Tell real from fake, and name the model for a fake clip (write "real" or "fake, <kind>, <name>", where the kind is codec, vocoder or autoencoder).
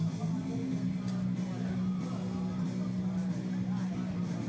real